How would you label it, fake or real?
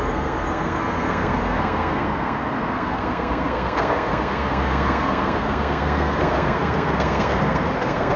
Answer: fake